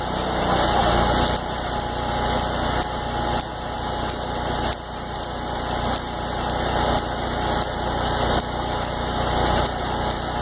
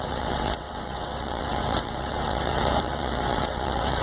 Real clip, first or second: first